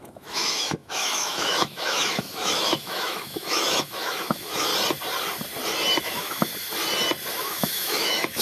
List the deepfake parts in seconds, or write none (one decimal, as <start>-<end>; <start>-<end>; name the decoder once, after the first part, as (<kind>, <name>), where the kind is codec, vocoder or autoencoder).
0.0-4.7 (autoencoder, DAC-VAE); 6.0-6.5; 7.4-8.4